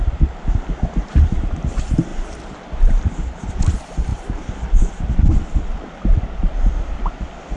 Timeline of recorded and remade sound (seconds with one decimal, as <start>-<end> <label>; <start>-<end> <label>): 0.0-7.6 recorded